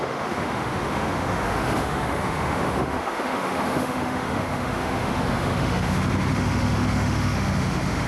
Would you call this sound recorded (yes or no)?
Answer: no